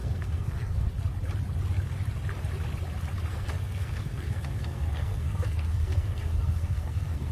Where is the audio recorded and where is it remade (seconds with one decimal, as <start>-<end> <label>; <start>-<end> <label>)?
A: 0.0-0.9 remade; 0.9-3.3 recorded; 3.3-7.3 remade